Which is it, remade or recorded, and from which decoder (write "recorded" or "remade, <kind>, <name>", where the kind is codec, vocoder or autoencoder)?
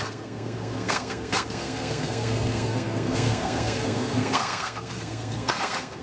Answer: remade, codec, SNAC